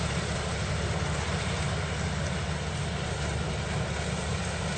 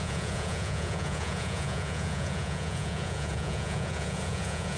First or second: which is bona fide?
first